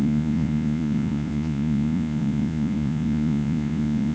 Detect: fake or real fake